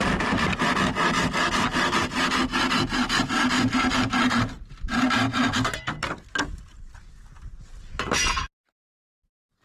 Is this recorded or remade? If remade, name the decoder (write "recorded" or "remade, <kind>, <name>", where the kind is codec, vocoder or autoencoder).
recorded